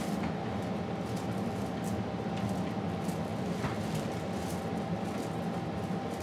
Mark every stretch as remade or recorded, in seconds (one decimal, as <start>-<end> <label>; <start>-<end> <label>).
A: 0.0-3.3 recorded; 3.3-4.2 remade; 4.2-6.2 recorded